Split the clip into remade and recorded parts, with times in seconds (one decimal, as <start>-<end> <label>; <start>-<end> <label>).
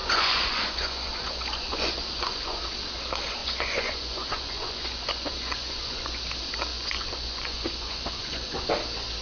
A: 0.0-2.6 remade; 2.6-3.4 recorded; 3.4-6.2 remade; 6.2-6.7 recorded; 6.7-8.6 remade; 8.6-9.2 recorded